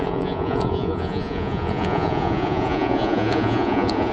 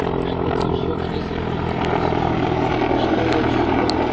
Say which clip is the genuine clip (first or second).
second